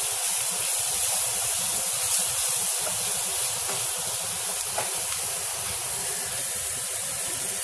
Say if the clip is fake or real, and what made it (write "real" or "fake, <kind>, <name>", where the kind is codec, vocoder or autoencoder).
fake, vocoder, BigVGAN v2